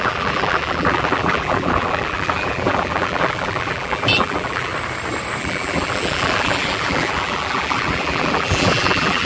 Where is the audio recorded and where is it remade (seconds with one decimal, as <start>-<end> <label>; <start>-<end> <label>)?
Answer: 0.0-4.7 remade; 4.7-5.4 recorded; 5.4-9.3 remade